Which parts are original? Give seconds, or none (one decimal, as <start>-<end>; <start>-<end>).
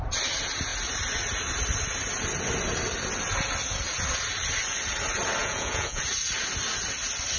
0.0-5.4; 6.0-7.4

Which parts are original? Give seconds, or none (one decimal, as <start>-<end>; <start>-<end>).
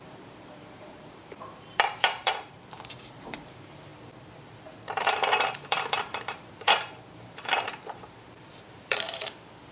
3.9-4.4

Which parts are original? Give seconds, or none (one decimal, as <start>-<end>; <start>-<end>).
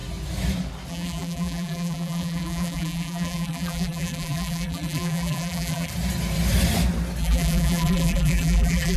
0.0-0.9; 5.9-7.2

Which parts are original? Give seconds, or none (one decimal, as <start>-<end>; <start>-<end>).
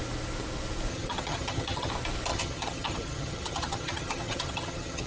0.0-0.9; 1.9-2.3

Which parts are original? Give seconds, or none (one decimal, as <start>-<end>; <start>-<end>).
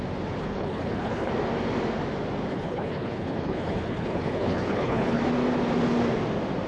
0.0-0.4; 1.3-2.5; 5.2-6.7